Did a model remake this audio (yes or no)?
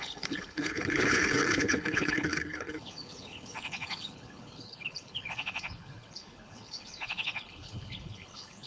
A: yes